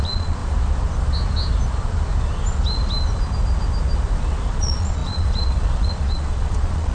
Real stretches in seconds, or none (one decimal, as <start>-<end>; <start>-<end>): 0.4-4.5